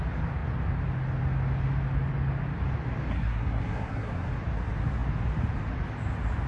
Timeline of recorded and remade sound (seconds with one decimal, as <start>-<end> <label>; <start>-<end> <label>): 0.0-3.1 recorded; 3.1-4.3 remade; 4.3-6.5 recorded